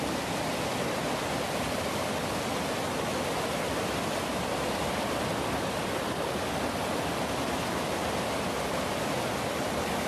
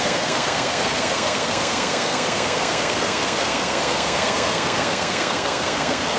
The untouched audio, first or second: first